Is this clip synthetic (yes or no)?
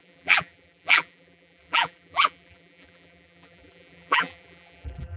yes